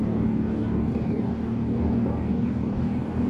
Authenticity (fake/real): fake